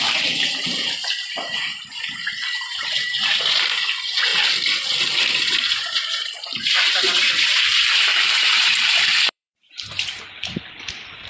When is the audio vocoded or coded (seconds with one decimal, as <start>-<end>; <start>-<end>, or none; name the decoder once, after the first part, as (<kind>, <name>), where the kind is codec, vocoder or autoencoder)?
0.0-4.3 (vocoder, BigVGAN v2); 5.5-11.3